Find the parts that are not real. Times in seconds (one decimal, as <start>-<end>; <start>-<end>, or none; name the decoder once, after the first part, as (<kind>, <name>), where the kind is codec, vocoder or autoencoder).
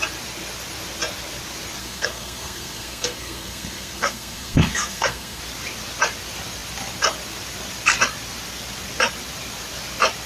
1.8-5.4 (codec, SNAC)